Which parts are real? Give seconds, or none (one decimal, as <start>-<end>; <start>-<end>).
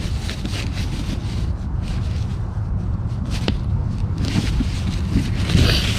0.0-2.3; 3.8-6.0